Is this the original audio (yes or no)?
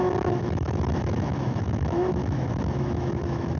no